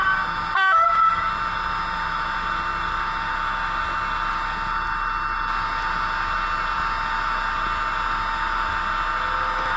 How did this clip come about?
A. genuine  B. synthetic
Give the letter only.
A